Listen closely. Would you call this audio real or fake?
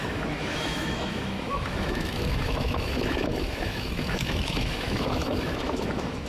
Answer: fake